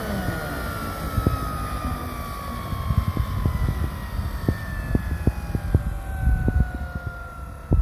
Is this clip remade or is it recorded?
recorded